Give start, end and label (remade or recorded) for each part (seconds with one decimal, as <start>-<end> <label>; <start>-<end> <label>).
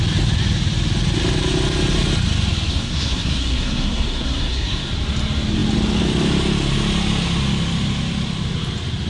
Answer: 0.0-2.7 recorded; 2.7-4.9 remade; 4.9-9.1 recorded